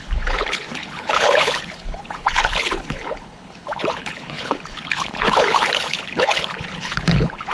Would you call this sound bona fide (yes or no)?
no